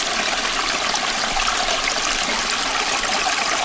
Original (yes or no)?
yes